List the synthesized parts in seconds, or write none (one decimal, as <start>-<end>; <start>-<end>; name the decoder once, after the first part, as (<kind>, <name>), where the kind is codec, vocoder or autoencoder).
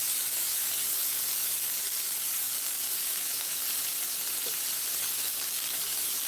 0.0-3.8 (codec, DAC); 5.0-6.3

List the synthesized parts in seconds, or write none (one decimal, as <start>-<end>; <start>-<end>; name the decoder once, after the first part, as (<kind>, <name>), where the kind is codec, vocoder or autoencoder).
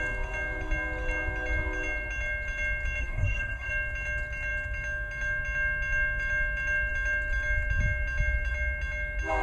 3.0-3.7 (codec, DAC)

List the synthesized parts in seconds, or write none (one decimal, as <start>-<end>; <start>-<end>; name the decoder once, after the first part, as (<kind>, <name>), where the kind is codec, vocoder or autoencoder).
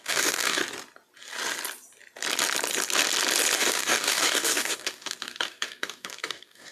0.0-0.6 (codec, DAC); 3.6-6.7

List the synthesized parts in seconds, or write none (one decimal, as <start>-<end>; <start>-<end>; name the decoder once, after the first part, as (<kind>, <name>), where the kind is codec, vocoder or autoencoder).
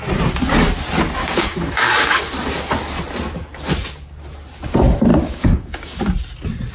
1.2-2.2 (codec, DAC); 5.1-6.0